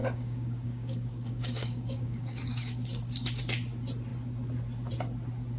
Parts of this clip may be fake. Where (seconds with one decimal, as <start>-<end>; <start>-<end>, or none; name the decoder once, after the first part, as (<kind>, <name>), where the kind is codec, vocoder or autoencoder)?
0.0-3.4 (codec, DAC)